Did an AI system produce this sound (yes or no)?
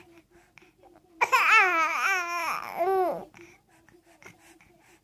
no